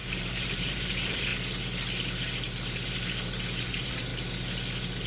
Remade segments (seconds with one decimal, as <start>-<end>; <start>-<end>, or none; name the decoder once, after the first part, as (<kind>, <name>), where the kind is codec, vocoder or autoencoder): 0.0-1.3 (vocoder, BigVGAN v2); 3.6-4.1